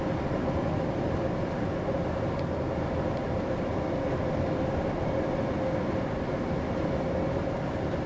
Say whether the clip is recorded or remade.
recorded